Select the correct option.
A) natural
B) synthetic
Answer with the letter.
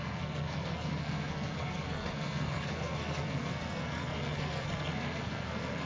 B